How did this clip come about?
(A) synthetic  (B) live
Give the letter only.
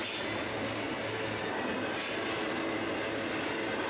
B